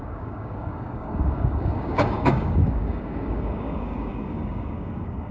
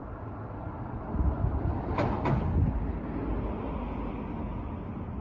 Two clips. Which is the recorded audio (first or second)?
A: second